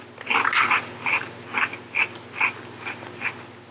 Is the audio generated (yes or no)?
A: no